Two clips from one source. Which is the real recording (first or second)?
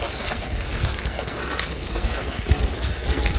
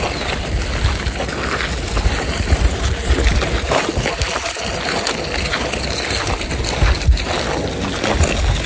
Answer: second